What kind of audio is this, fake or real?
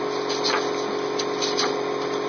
real